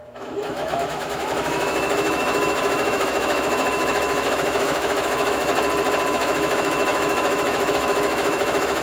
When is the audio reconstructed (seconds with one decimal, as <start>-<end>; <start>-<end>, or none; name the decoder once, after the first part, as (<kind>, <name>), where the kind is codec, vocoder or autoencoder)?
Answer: 0.0-5.5 (autoencoder, DAC-VAE); 6.1-8.8